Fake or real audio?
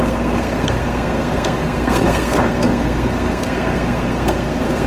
fake